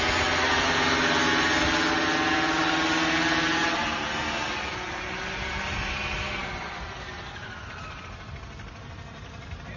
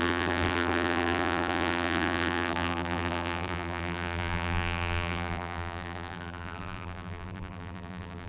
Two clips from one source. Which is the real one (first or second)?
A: first